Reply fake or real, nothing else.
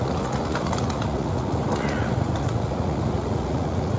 fake